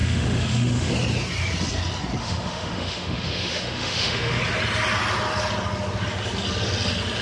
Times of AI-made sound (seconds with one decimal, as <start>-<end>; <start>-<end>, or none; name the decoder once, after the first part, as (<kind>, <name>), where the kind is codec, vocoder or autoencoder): 0.0-0.9 (autoencoder, DAC-VAE); 2.2-4.4